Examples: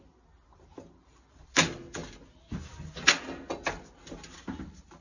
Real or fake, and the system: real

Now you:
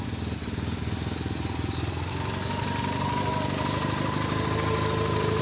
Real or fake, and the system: real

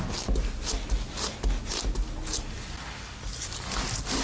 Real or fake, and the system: real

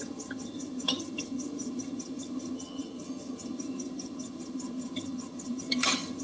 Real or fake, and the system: fake, vocoder, HiFi-GAN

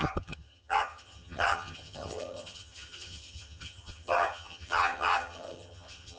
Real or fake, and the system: fake, vocoder, HiFi-GAN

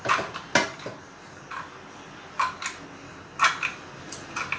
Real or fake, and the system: real